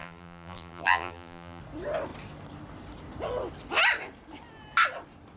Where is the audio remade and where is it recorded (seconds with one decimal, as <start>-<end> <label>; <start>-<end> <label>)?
0.0-1.6 remade; 1.6-5.4 recorded